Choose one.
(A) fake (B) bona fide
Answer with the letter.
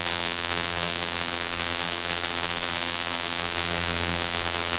A